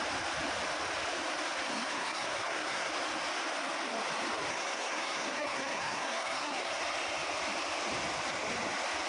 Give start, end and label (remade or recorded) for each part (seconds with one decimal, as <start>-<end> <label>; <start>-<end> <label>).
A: 0.0-1.7 recorded; 1.7-2.9 remade; 2.9-4.5 recorded; 4.5-6.8 remade; 6.8-9.1 recorded